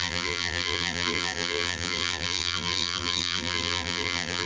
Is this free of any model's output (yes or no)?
no